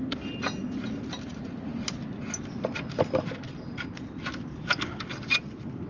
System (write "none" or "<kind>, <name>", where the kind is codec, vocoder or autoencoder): none